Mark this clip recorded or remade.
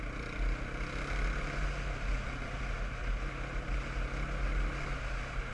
recorded